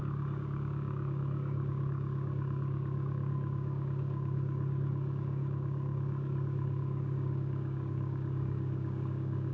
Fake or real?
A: fake